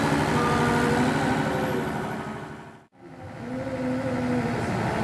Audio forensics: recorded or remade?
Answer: recorded